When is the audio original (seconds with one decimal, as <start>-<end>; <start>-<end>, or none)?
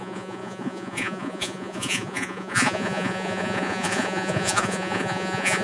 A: none